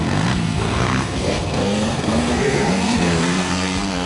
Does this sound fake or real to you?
fake